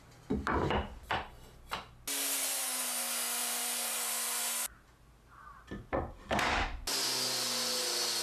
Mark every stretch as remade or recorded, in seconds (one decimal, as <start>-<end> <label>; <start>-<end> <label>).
0.0-3.4 recorded; 3.4-4.4 remade; 4.4-8.2 recorded